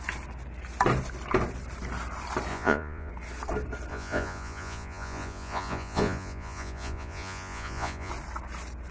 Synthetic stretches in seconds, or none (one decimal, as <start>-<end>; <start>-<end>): 2.5-3.1; 3.9-8.1